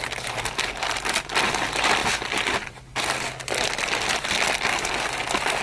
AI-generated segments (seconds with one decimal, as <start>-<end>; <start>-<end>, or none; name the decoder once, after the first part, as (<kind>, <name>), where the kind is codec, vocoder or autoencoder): none